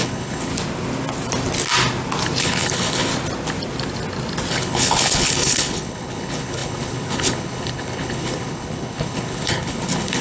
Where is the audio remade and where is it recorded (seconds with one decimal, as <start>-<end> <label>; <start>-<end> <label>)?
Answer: 0.0-0.5 remade; 0.5-2.4 recorded; 2.4-3.1 remade; 3.1-4.5 recorded; 4.5-10.2 remade